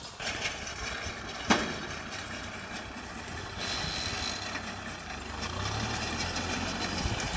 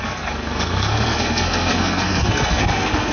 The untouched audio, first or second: first